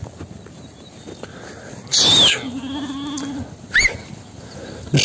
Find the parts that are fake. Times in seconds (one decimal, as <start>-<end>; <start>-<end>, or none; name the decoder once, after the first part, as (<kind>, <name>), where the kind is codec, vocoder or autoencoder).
none